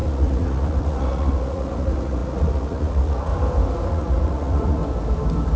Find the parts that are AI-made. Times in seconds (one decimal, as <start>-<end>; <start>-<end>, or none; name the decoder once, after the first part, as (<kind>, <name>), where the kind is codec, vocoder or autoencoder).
0.0-3.3 (vocoder, Vocos); 3.9-4.8